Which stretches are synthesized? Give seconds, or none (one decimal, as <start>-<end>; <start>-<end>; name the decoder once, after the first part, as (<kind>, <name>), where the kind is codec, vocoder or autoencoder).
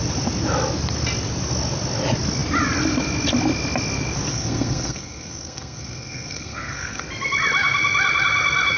4.3-7.0 (codec, SNAC)